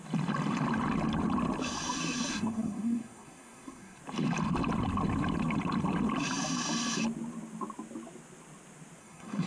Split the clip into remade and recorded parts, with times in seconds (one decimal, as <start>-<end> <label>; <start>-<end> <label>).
0.0-2.3 recorded; 2.3-4.0 remade; 4.0-9.0 recorded; 9.0-9.5 remade

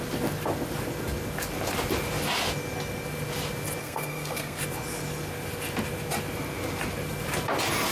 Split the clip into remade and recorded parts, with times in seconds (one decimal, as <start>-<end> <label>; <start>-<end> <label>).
0.0-3.8 recorded; 3.8-4.6 remade; 4.6-7.9 recorded

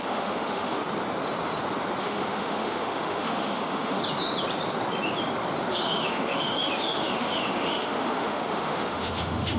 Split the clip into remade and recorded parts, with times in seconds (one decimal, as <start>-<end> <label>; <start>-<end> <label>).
0.0-0.8 remade; 0.8-2.0 recorded; 2.0-4.0 remade; 4.0-5.7 recorded; 5.7-9.6 remade

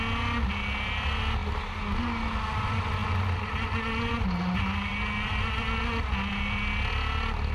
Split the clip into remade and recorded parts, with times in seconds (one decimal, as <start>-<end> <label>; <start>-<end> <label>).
0.0-7.5 recorded

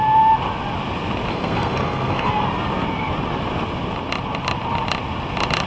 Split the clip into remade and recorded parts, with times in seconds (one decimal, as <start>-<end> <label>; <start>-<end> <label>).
0.0-1.3 recorded; 1.3-2.3 remade; 2.3-5.7 recorded

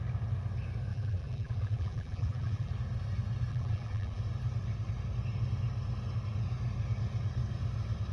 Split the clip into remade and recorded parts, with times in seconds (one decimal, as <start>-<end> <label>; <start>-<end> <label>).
0.0-0.9 recorded; 0.9-2.7 remade; 2.7-3.5 recorded; 3.5-4.2 remade; 4.2-8.1 recorded

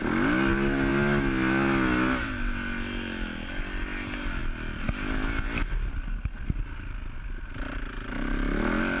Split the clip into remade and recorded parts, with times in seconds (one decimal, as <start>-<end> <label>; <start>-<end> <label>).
0.0-9.0 recorded

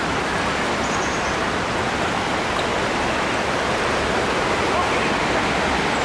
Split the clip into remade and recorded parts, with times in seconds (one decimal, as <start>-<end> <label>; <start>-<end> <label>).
0.0-6.0 recorded